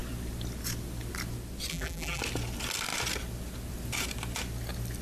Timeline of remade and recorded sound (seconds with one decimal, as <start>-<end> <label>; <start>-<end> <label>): 0.0-1.7 recorded; 1.7-2.2 remade; 2.2-5.0 recorded